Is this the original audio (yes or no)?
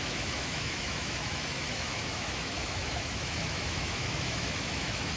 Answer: no